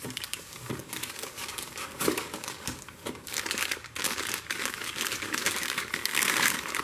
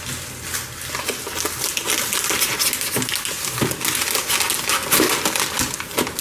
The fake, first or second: first